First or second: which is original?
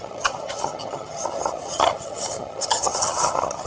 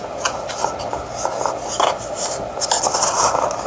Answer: second